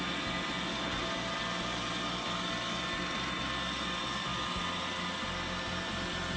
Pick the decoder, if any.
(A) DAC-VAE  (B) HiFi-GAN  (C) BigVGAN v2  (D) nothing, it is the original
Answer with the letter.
D